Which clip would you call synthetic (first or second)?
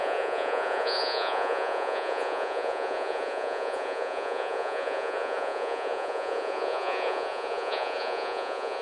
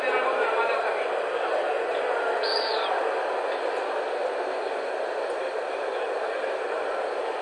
first